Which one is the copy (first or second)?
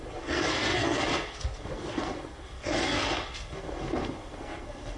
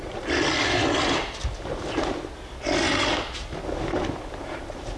first